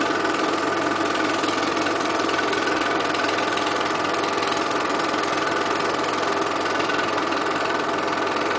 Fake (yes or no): no